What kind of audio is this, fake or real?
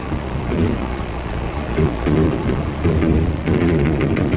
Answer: fake